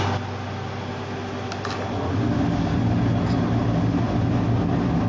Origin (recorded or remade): recorded